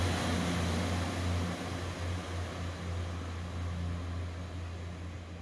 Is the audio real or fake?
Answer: real